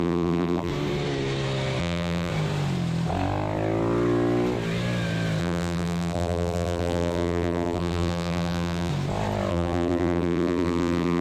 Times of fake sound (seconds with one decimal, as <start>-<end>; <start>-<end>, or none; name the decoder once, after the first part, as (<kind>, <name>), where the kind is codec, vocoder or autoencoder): 0.0-0.7 (vocoder, BigVGAN v2); 1.8-2.3; 5.4-8.9; 9.5-11.2